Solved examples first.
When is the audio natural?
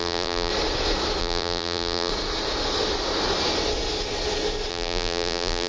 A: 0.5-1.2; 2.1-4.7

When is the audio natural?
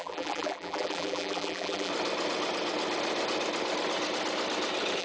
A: 1.9-5.0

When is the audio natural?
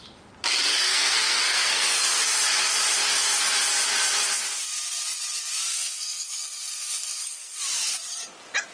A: 0.0-0.7; 2.3-5.7; 7.6-8.7